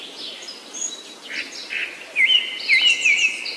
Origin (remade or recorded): recorded